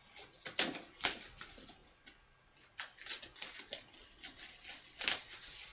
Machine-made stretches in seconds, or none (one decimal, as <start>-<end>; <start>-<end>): none